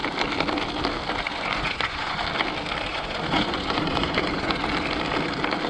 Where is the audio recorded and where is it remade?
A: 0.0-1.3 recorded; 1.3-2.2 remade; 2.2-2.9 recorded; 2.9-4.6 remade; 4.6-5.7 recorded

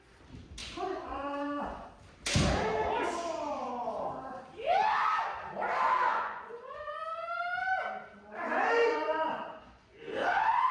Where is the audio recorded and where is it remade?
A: 0.0-0.6 recorded; 0.6-1.9 remade; 1.9-6.1 recorded; 6.1-7.0 remade; 7.0-8.5 recorded; 8.5-10.0 remade; 10.0-10.7 recorded